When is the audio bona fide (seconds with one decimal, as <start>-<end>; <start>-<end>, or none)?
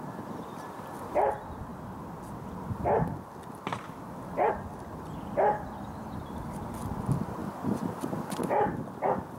0.0-9.4